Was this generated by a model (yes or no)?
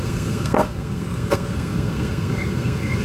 yes